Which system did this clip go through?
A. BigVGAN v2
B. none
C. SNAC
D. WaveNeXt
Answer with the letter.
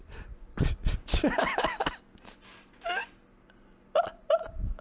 A